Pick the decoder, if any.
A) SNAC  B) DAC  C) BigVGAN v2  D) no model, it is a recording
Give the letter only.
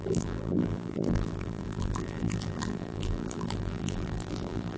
C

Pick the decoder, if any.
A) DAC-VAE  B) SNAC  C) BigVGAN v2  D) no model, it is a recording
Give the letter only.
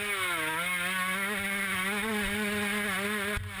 D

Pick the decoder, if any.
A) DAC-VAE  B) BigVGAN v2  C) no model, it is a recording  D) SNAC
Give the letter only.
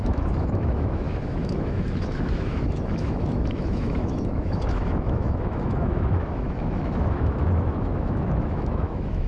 A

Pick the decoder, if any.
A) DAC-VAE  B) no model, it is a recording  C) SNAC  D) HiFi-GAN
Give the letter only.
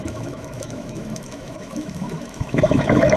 A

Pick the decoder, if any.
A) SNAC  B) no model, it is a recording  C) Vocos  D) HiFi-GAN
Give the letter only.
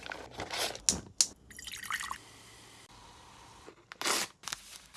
B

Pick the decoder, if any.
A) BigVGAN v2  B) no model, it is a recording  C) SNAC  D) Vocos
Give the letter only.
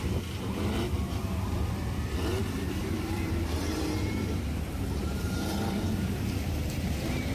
A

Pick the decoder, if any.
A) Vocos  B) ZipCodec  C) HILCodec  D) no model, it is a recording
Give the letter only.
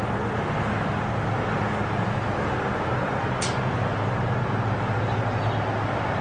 D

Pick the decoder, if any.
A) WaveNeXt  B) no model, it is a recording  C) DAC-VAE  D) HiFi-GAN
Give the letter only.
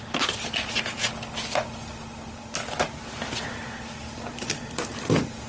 B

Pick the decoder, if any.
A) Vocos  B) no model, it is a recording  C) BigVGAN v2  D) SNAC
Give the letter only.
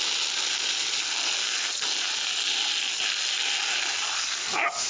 B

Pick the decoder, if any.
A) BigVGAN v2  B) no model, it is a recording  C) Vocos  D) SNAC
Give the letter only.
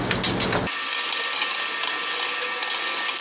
B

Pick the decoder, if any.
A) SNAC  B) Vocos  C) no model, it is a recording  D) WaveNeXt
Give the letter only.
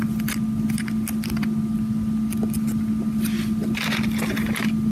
C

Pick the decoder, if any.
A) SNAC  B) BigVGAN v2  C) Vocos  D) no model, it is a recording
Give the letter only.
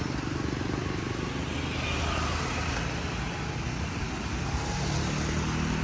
D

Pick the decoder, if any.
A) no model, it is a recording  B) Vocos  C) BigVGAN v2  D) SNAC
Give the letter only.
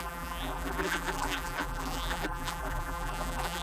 C